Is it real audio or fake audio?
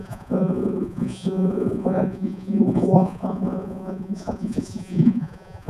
fake